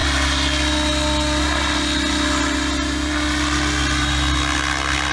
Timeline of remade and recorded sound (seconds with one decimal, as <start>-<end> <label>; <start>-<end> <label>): 0.0-5.1 recorded